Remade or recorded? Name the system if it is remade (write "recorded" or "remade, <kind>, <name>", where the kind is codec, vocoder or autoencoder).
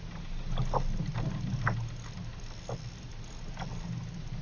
recorded